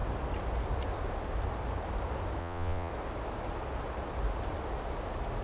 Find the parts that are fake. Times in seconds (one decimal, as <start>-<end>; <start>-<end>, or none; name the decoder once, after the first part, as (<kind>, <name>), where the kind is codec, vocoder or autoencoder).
2.4-2.9 (vocoder, Vocos)